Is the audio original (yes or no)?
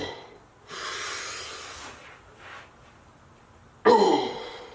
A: yes